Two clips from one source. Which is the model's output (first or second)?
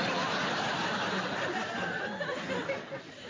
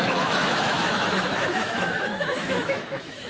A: second